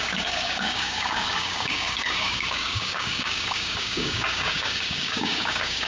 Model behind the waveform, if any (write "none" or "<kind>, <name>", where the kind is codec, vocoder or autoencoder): codec, DAC